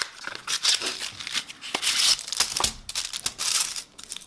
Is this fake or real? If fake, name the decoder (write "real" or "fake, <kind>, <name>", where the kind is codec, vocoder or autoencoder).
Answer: real